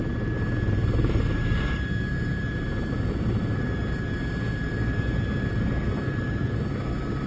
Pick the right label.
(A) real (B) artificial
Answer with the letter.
A